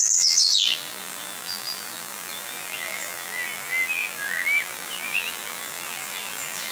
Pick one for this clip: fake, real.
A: fake